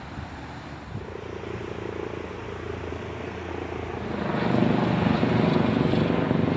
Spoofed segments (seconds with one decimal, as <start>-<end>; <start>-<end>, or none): 2.9-3.5